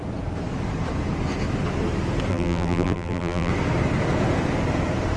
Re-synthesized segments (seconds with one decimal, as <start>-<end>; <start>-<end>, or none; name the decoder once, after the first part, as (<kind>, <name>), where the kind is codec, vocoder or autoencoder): 2.3-3.5 (vocoder, BigVGAN v2)